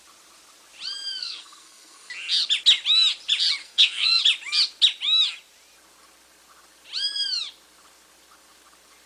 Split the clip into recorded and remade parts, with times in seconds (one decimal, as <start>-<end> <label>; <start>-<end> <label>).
0.0-1.2 recorded; 1.2-2.1 remade; 2.1-3.6 recorded; 3.6-4.2 remade; 4.2-9.1 recorded